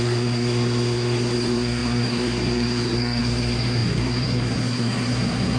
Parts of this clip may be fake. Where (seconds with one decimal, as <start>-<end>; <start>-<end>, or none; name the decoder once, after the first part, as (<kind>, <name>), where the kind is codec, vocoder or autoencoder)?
0.0-5.6 (codec, SNAC)